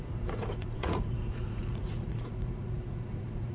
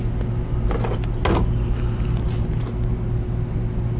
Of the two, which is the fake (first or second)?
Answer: first